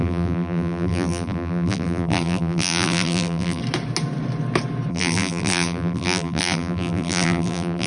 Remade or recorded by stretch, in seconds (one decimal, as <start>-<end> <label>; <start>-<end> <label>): 0.0-3.6 remade; 3.6-4.9 recorded; 4.9-7.9 remade